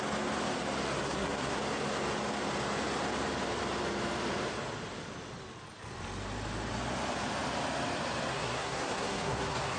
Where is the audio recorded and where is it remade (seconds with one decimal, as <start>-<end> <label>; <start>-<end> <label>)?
0.0-1.0 recorded; 1.0-1.6 remade; 1.6-8.3 recorded; 8.3-9.8 remade